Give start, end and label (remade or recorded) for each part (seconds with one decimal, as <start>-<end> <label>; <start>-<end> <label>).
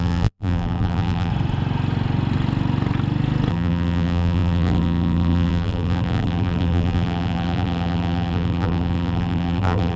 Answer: 0.0-1.3 remade; 1.3-3.5 recorded; 3.5-10.0 remade